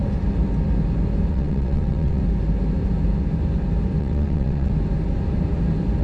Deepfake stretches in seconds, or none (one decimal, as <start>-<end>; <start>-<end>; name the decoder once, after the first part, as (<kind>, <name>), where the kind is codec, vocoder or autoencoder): 1.3-2.2 (vocoder, WaveNeXt); 4.0-4.7